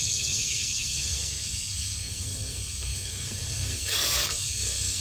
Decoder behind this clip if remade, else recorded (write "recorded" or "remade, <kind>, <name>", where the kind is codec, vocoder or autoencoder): remade, codec, SNAC